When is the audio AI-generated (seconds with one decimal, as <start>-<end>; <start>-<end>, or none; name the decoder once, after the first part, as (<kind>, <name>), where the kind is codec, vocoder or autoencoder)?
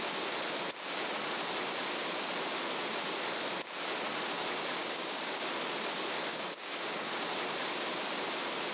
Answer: 4.8-5.4 (codec, DAC); 6.3-7.1